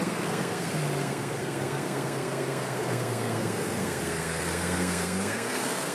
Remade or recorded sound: remade